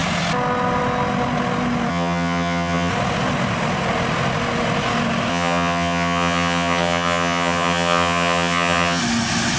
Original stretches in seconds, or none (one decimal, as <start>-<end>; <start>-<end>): 0.0-1.9; 2.9-5.3; 9.0-9.6

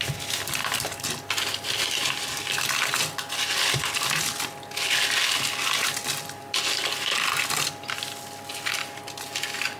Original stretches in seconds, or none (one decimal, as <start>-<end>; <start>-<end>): 0.0-9.8

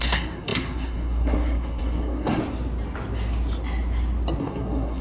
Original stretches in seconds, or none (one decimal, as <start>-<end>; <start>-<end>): 2.4-4.4